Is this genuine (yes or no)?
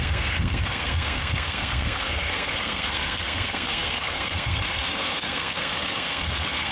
no